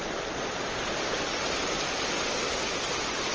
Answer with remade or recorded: recorded